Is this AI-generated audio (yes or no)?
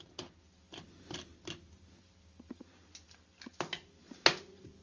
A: no